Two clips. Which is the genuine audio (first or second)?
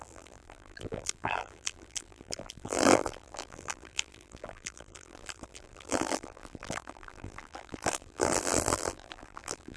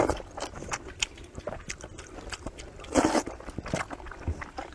second